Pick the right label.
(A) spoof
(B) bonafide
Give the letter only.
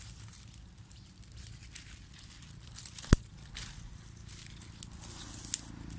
B